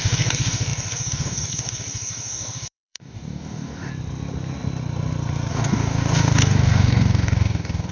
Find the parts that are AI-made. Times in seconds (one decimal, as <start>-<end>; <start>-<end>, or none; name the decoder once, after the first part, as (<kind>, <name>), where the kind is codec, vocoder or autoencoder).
0.0-3.9 (codec, DAC); 5.5-7.9